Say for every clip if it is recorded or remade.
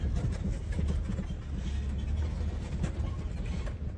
recorded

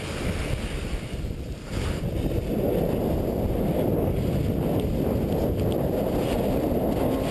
recorded